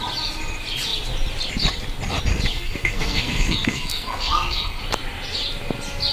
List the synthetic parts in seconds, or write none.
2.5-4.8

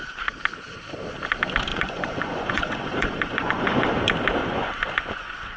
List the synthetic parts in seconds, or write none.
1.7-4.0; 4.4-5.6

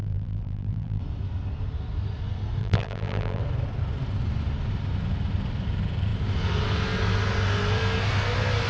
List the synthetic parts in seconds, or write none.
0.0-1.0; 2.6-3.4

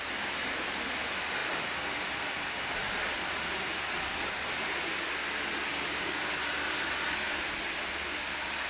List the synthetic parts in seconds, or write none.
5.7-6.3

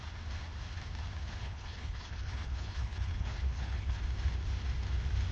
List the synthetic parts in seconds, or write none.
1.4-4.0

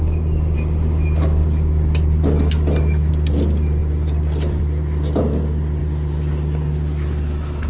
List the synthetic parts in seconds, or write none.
3.8-4.6

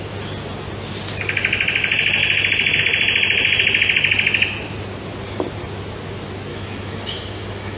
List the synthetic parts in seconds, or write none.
6.5-7.8